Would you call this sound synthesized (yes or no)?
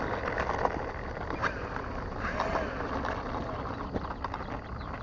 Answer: no